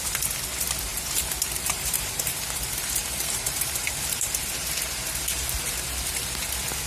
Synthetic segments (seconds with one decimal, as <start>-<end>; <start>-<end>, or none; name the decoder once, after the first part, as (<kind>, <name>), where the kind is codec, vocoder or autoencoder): 0.9-4.7 (vocoder, BigVGAN v2)